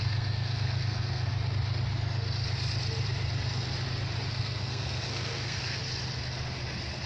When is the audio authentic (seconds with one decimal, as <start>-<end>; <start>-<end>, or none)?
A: 1.3-4.3; 5.8-7.1